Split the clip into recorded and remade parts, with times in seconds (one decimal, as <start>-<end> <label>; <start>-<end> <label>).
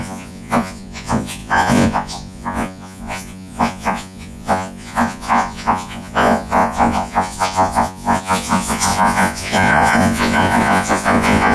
0.0-11.5 remade